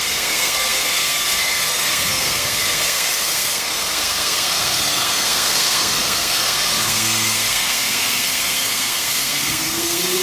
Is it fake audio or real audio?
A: fake